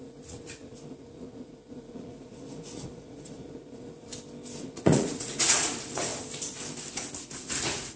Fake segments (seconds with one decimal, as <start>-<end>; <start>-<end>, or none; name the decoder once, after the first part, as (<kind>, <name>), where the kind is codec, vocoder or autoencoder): 0.0-4.1 (vocoder, Vocos); 4.6-6.1; 7.2-8.0